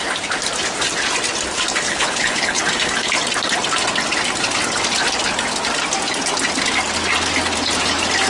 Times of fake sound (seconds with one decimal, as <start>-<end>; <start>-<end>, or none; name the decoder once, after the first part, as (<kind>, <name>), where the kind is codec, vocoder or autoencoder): 1.9-2.6 (codec, HILCodec)